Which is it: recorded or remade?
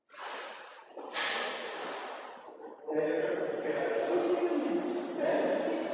recorded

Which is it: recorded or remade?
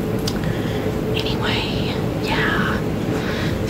recorded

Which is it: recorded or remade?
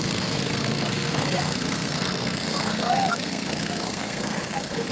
remade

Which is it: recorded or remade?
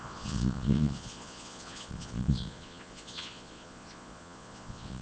remade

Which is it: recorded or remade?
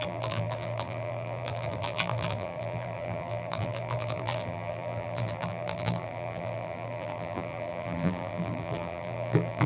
remade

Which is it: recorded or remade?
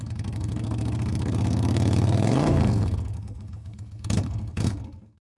remade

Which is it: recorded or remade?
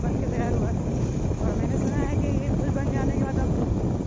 recorded